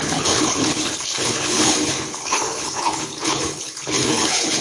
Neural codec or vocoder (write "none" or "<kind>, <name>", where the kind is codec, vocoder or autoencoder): codec, HILCodec